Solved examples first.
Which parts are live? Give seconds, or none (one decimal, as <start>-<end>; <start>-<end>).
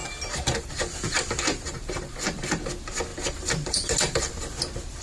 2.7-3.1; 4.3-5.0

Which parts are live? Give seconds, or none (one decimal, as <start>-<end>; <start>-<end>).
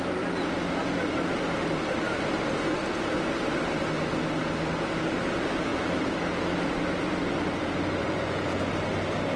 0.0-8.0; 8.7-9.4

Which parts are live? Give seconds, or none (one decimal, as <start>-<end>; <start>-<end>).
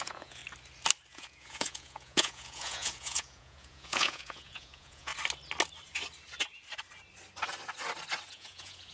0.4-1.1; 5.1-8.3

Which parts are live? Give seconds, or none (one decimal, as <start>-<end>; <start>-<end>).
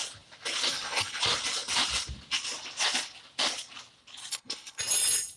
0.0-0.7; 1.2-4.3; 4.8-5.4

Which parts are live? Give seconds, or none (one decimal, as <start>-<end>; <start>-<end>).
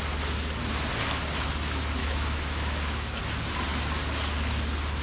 0.0-2.0; 3.2-5.0